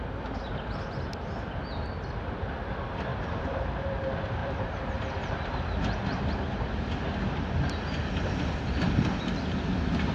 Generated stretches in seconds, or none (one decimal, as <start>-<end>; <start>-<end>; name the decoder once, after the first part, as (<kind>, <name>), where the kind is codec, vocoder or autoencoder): 3.1-4.0 (vocoder, BigVGAN v2); 4.4-5.0